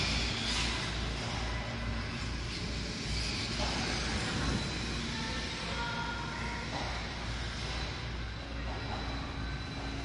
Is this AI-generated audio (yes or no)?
no